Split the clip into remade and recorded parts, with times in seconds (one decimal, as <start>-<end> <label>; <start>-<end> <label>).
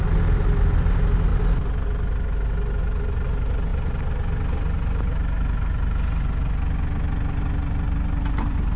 0.0-8.8 recorded